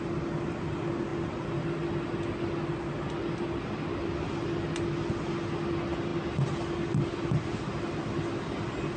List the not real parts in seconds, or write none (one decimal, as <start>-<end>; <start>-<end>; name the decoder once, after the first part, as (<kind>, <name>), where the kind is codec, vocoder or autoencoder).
none